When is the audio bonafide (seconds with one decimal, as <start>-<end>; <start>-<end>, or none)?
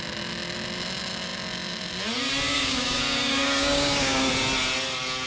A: 0.0-2.5; 4.3-5.3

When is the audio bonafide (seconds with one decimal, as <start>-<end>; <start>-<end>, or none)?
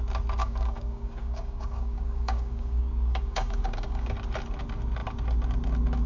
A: 0.0-0.4; 4.1-6.1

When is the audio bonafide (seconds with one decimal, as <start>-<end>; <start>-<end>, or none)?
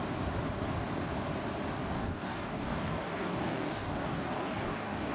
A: 0.0-1.8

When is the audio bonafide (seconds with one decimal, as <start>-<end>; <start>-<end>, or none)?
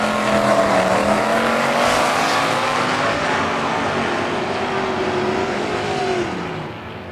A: 0.0-0.5; 3.7-5.4; 6.0-7.1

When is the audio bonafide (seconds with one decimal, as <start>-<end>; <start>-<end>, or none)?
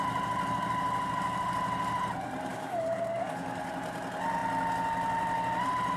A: 0.0-2.5; 3.6-6.0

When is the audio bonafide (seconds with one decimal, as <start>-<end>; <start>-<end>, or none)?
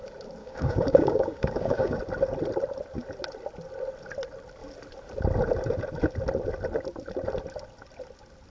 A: 0.0-0.4; 2.0-8.5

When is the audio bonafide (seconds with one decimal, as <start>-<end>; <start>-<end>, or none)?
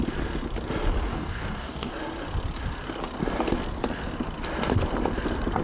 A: 0.0-1.1; 1.9-5.6